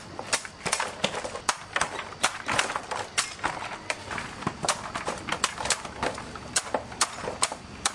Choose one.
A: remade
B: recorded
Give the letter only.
B